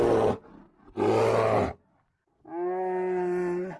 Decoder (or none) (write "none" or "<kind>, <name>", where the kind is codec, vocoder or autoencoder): none